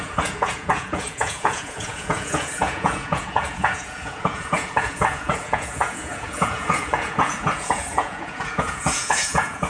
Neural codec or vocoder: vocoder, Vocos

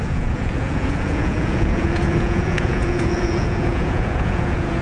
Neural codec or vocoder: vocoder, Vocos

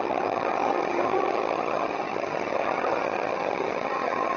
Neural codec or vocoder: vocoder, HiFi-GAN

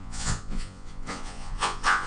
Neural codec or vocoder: vocoder, Vocos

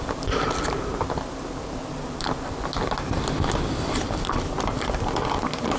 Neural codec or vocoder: none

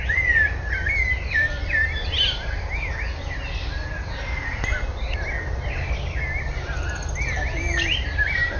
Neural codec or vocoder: none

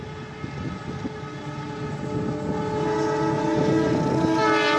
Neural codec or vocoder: none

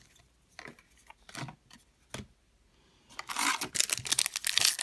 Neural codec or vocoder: none